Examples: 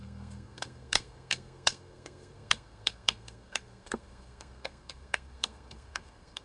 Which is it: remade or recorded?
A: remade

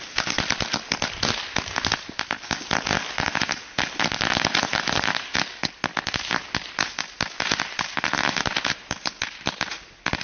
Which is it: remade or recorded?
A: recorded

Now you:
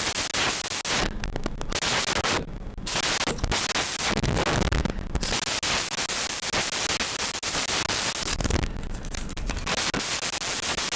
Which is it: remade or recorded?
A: recorded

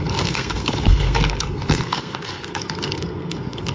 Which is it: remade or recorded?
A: remade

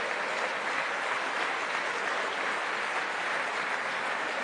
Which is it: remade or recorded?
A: recorded